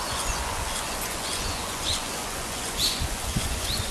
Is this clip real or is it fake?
fake